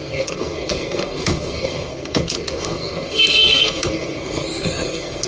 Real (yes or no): no